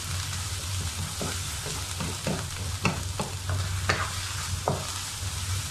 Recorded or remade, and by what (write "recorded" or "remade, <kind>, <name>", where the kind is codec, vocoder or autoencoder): recorded